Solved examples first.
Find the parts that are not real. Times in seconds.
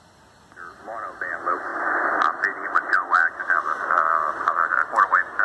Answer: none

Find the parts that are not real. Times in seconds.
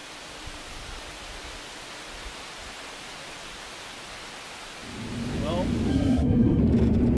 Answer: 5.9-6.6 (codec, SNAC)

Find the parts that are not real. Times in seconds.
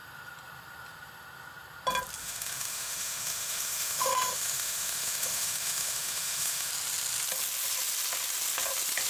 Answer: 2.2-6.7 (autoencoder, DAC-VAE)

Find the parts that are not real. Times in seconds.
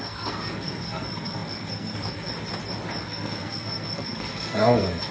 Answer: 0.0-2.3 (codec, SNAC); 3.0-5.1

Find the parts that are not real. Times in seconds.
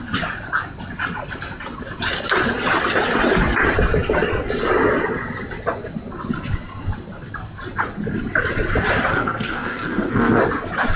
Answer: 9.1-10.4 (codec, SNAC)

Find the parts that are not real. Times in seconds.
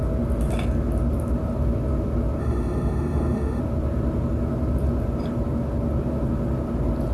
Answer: 2.4-3.6 (autoencoder, DAC-VAE)